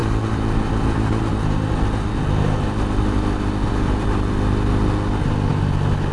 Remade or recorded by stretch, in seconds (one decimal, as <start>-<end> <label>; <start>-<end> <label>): 0.0-6.1 recorded